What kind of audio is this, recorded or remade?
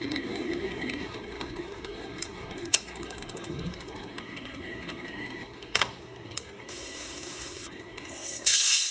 remade